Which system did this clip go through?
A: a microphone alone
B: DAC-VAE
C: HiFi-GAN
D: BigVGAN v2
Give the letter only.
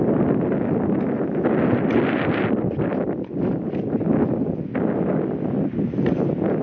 A